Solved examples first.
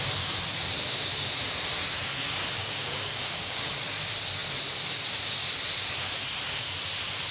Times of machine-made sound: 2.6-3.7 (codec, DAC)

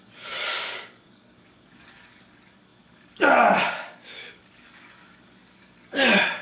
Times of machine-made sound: 0.0-6.4 (codec, DAC)

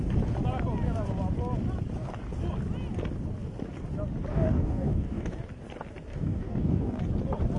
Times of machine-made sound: 4.3-5.3 (codec, DAC); 6.1-7.0

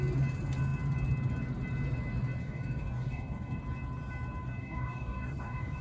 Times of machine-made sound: 2.4-3.6 (codec, DAC); 4.6-5.8

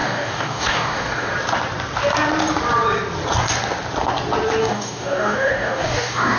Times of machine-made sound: 0.0-1.3 (codec, DAC); 4.6-6.4